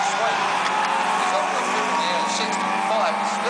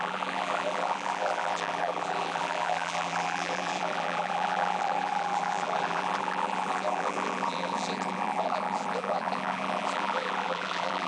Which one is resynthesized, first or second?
second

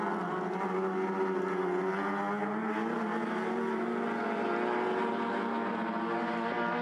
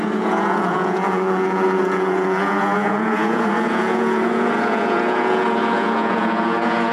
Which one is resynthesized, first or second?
second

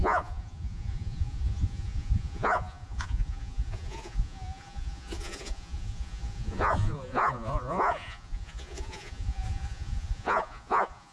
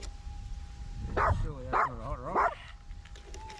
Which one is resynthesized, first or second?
first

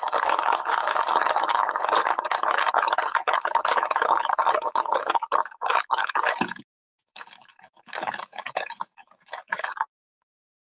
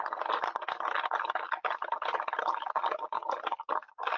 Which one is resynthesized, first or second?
first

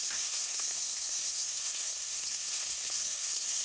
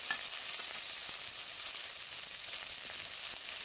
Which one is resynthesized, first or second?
first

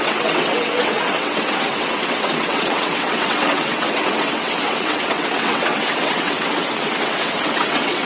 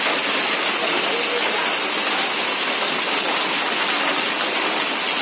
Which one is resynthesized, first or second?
first